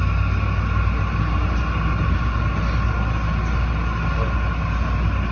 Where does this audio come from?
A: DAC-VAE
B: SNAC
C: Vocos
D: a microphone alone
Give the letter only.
D